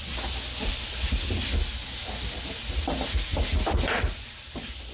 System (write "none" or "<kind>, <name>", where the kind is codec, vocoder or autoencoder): none